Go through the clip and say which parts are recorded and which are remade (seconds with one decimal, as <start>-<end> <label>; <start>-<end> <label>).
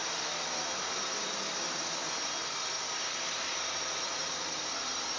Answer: 0.0-5.2 remade